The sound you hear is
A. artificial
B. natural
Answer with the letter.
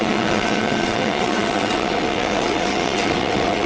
A